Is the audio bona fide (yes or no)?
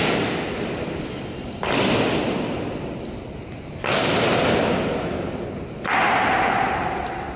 yes